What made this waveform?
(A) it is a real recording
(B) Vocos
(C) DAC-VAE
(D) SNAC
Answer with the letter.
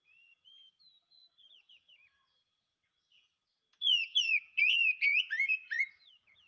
B